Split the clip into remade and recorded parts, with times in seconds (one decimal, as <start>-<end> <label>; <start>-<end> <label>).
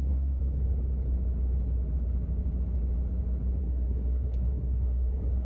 0.0-0.4 remade; 0.4-3.6 recorded; 3.6-5.4 remade